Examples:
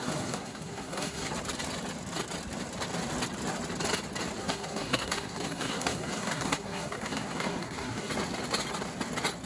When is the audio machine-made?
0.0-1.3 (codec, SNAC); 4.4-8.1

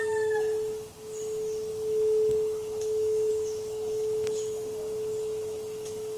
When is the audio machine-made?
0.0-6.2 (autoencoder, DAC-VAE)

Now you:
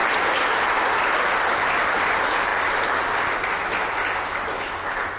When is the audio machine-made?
none

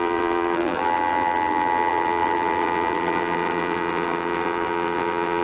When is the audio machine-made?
0.0-5.4 (vocoder, BigVGAN v2)

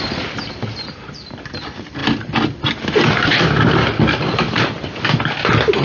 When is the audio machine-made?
none

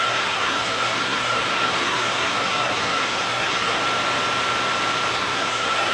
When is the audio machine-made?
0.0-3.8 (codec, SNAC); 5.1-5.9

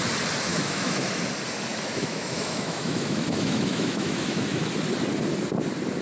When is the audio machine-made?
0.5-1.1 (autoencoder, DAC-VAE); 1.7-4.7

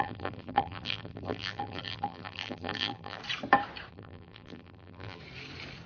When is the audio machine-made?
0.0-3.2 (vocoder, BigVGAN v2); 3.9-5.2